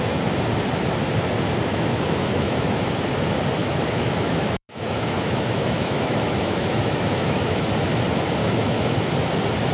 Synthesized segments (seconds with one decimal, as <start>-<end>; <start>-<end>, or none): 1.7-2.8; 3.6-7.7; 8.4-9.1